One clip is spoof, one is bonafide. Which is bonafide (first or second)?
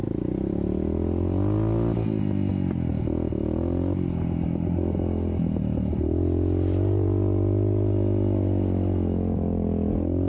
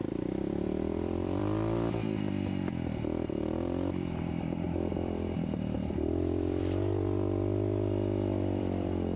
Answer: first